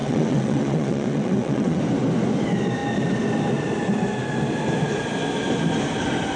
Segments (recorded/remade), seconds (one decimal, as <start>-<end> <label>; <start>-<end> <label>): 0.0-1.8 remade; 1.8-6.4 recorded